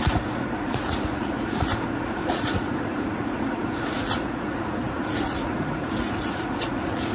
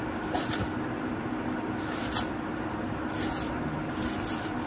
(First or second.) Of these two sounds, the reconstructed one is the first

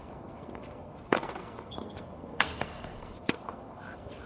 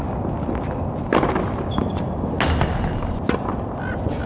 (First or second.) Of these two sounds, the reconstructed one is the first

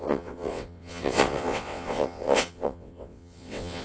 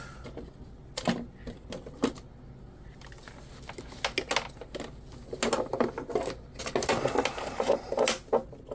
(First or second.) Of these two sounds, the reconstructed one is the first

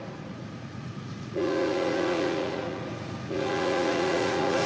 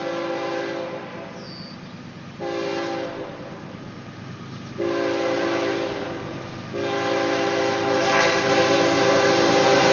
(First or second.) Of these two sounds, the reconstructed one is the first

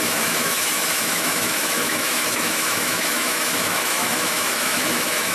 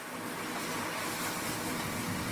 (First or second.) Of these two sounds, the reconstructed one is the first